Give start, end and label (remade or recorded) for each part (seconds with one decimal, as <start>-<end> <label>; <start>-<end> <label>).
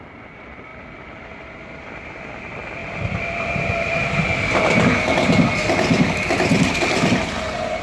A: 0.0-2.8 recorded; 2.8-4.2 remade; 4.2-7.8 recorded